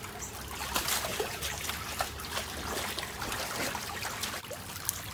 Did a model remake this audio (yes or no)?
no